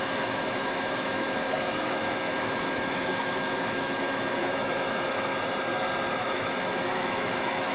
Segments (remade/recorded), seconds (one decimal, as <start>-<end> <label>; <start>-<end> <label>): 0.0-5.3 remade; 5.3-6.2 recorded; 6.2-7.7 remade